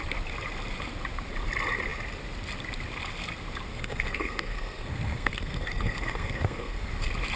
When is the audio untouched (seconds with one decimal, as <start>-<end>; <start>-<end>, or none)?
0.0-3.7; 6.9-7.4